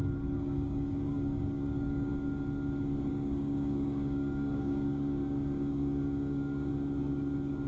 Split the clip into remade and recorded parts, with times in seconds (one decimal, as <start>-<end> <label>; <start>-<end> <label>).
0.0-2.1 remade; 2.1-3.1 recorded; 3.1-6.7 remade; 6.7-7.7 recorded

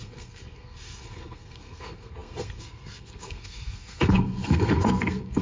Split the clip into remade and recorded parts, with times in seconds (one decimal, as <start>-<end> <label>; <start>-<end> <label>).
0.0-5.4 remade

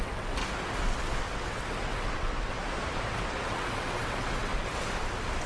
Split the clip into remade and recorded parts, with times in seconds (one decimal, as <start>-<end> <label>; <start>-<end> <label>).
0.0-0.4 remade; 0.4-1.2 recorded; 1.2-2.6 remade; 2.6-3.1 recorded; 3.1-4.5 remade; 4.5-5.5 recorded

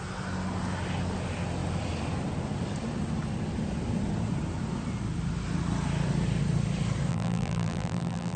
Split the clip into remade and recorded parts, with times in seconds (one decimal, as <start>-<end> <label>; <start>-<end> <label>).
0.0-7.1 recorded; 7.1-8.4 remade

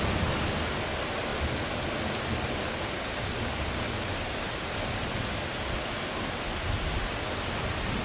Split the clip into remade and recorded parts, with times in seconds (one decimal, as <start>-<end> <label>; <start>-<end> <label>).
0.0-8.0 recorded

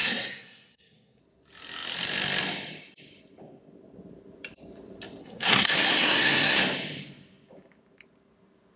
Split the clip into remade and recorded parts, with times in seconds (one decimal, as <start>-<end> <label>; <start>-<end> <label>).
0.0-1.2 remade; 1.2-5.2 recorded; 5.2-6.6 remade; 6.6-8.8 recorded

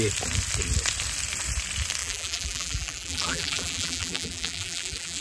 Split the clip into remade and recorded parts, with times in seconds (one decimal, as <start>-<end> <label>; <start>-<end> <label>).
0.0-2.0 recorded; 2.0-5.2 remade